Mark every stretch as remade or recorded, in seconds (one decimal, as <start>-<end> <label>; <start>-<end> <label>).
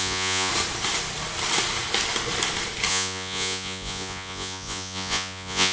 0.0-0.5 remade; 0.5-2.9 recorded; 2.9-5.7 remade